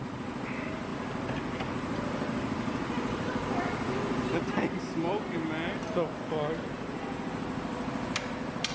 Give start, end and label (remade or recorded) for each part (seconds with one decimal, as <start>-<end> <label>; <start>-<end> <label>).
0.0-8.7 recorded